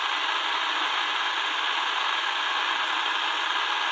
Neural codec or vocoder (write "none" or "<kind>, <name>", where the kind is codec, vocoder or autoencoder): none